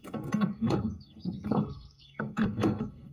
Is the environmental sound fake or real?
fake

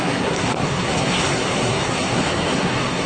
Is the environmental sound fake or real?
fake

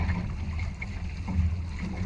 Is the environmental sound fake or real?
real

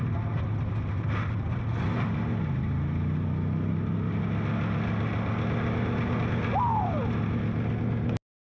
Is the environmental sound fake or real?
real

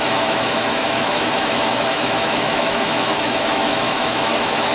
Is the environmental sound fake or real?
fake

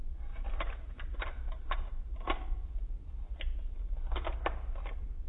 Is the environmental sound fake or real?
real